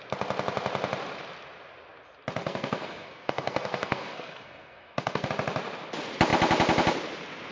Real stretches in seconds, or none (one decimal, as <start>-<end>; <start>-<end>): 0.0-2.4; 5.3-7.5